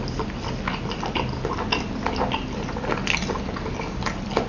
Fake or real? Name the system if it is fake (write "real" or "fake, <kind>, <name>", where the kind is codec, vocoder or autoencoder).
real